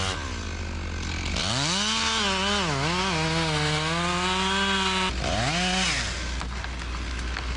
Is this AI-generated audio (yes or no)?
no